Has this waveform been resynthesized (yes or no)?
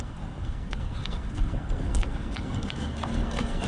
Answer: yes